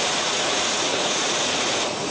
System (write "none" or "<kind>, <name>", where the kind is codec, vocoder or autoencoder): vocoder, Vocos